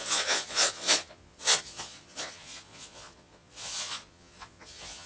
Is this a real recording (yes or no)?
no